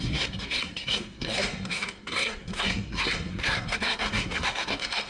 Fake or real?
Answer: fake